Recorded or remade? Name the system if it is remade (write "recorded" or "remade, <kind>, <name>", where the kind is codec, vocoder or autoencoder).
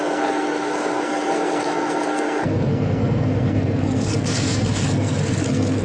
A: remade, codec, SNAC